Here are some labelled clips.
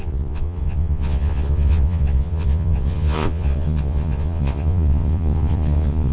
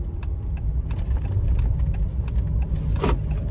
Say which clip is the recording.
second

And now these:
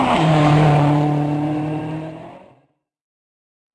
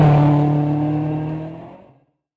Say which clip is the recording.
second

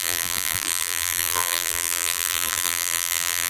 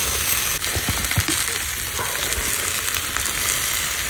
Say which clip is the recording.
second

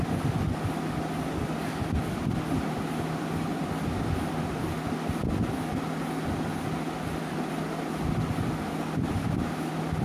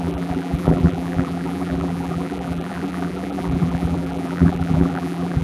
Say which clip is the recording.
first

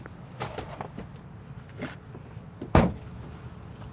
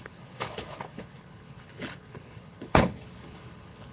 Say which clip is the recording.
first